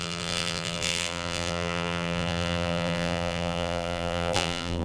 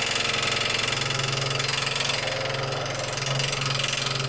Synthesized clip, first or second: first